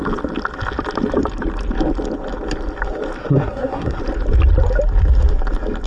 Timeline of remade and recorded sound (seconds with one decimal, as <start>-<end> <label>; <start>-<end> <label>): 0.0-3.2 recorded; 3.2-4.0 remade; 4.0-5.9 recorded